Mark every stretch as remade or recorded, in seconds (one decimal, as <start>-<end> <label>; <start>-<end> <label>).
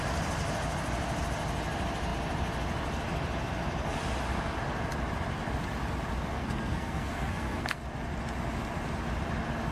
0.0-6.3 recorded; 6.3-7.8 remade; 7.8-9.7 recorded